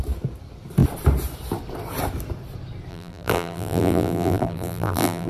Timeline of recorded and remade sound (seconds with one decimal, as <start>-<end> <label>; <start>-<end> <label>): 0.0-2.9 recorded; 2.9-5.3 remade